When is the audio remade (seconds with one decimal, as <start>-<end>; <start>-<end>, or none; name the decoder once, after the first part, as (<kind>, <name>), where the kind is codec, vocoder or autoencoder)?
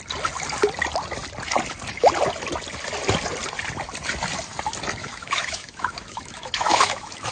5.0-7.3 (autoencoder, DAC-VAE)